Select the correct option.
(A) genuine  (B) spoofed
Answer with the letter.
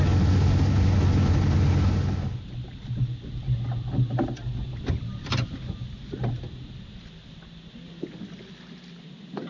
A